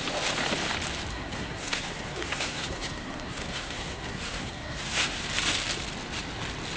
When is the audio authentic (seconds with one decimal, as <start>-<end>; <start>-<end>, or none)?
0.0-1.1; 5.2-6.8